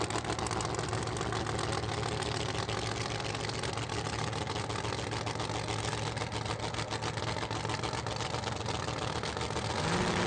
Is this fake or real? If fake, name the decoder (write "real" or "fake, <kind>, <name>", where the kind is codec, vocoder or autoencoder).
real